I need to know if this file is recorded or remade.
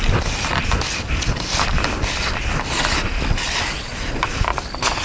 recorded